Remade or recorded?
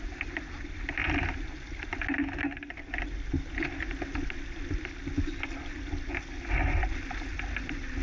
recorded